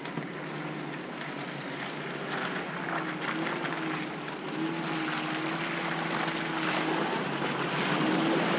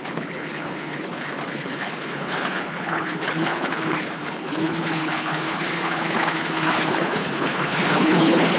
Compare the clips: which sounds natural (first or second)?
first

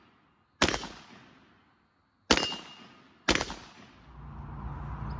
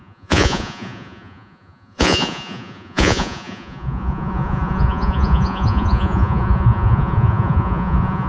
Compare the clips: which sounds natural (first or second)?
first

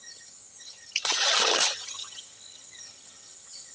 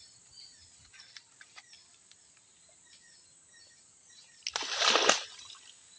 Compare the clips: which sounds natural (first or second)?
second